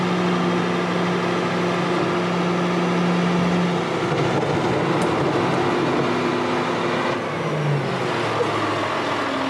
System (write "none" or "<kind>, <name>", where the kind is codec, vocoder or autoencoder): none